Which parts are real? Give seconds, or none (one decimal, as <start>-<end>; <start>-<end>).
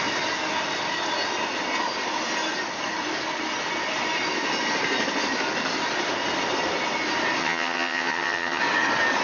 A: 0.0-7.4; 8.6-9.2